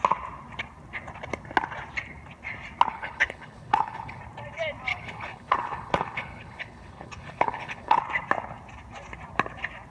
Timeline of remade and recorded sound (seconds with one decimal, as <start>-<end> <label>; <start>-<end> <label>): 0.0-2.9 recorded; 2.9-4.2 remade; 4.2-4.9 recorded; 4.9-8.0 remade; 8.0-9.9 recorded